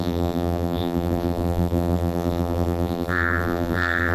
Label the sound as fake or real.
fake